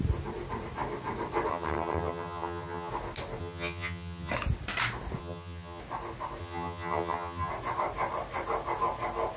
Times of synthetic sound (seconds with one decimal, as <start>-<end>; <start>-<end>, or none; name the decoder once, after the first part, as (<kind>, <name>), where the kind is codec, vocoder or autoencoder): 1.5-2.9 (vocoder, HiFi-GAN); 3.4-4.3; 5.2-5.8; 6.4-7.5